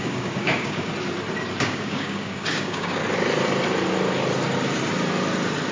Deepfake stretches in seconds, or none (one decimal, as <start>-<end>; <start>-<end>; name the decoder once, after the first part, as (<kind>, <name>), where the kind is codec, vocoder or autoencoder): 0.0-0.9 (codec, DAC); 1.6-3.0